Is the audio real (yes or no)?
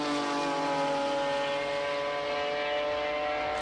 yes